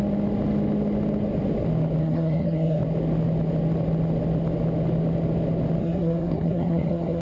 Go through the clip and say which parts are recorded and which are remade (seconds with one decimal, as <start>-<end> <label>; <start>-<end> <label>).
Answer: 0.0-2.0 recorded; 2.0-2.8 remade; 2.8-5.8 recorded; 5.8-7.2 remade